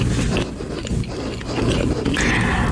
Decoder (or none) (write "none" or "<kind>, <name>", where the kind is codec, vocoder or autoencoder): none